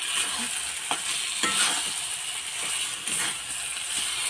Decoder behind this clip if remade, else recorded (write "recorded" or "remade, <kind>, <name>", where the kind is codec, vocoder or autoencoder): recorded